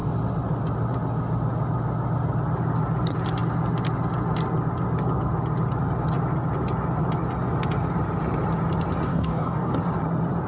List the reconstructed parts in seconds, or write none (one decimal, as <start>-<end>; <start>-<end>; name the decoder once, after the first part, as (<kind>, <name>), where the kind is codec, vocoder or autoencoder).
9.1-9.7 (codec, DAC)

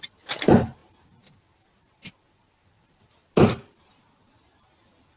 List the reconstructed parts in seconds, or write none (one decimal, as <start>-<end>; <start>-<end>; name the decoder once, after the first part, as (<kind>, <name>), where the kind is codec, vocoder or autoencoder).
none

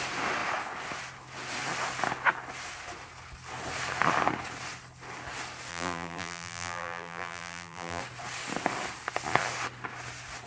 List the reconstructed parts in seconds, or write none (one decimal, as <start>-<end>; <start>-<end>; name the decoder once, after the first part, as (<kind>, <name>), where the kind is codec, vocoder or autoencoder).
5.7-8.0 (vocoder, BigVGAN v2)